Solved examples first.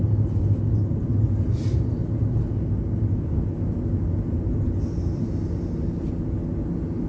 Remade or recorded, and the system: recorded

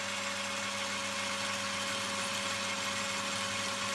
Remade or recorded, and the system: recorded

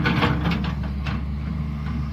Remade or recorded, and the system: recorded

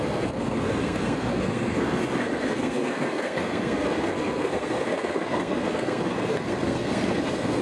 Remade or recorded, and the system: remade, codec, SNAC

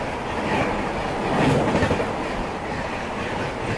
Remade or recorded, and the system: recorded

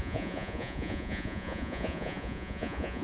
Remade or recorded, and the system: remade, vocoder, Vocos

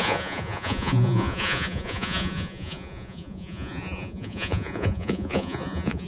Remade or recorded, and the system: remade, vocoder, Vocos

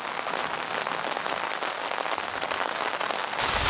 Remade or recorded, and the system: recorded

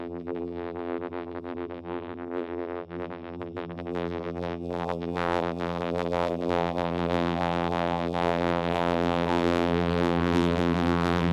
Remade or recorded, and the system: remade, vocoder, BigVGAN v2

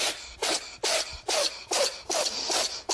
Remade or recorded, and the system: recorded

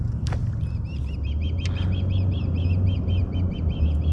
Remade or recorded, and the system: recorded